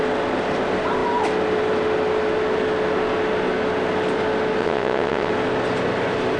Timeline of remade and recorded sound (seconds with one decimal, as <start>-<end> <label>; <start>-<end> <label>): 0.0-4.6 recorded; 4.6-5.3 remade; 5.3-6.4 recorded